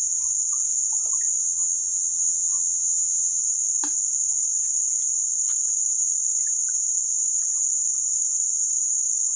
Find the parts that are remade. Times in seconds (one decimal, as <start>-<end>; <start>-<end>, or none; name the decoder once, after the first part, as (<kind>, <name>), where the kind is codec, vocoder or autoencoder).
1.4-3.4 (vocoder, HiFi-GAN)